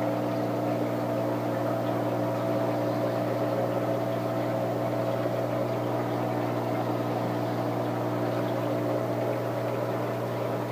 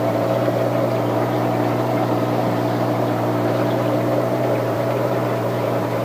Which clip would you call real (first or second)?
first